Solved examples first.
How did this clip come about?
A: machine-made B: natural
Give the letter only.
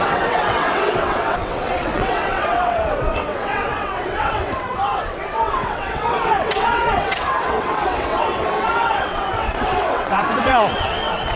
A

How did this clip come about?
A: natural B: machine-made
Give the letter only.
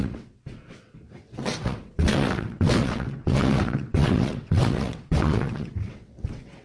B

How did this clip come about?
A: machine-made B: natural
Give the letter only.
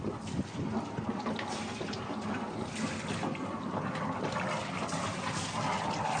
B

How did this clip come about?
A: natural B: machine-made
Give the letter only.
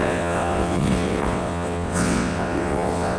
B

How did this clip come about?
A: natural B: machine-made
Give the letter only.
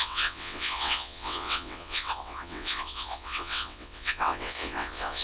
B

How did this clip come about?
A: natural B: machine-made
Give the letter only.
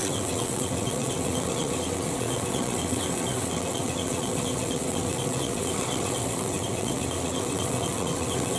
B